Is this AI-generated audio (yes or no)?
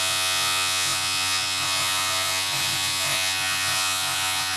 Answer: yes